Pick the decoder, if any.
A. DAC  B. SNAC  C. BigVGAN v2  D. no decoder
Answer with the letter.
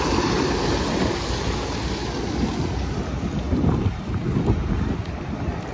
D